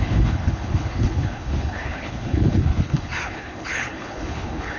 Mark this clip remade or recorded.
remade